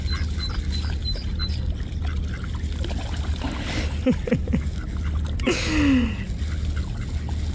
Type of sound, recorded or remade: recorded